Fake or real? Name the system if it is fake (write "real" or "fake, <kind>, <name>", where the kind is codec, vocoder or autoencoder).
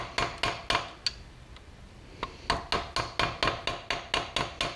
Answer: real